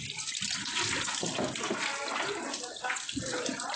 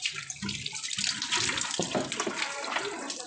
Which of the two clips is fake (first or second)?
second